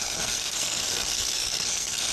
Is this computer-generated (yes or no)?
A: yes